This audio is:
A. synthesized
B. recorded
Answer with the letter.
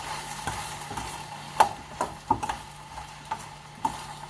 B